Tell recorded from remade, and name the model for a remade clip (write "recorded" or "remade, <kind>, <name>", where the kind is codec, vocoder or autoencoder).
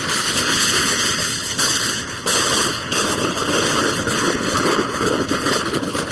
remade, codec, HILCodec